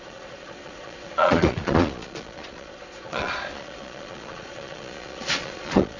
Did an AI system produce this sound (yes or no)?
yes